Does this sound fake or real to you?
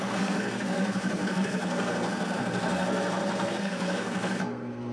fake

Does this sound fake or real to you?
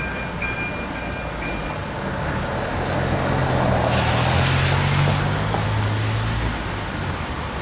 real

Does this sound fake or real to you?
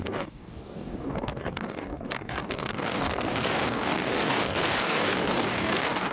fake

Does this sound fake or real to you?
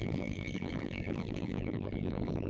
fake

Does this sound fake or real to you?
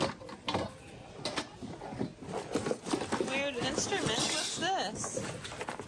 real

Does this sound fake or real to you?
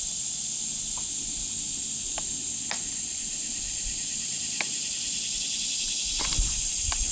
real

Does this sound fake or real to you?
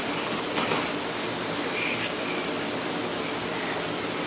real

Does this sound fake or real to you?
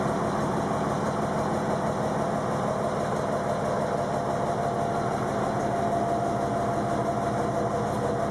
real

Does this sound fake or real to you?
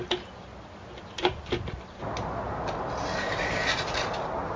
real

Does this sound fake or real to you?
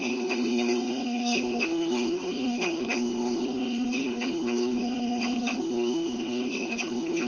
fake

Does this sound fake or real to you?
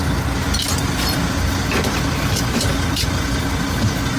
real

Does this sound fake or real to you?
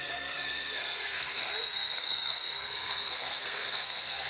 fake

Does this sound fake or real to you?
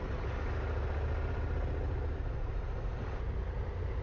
real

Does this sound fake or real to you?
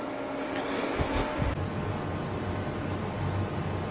real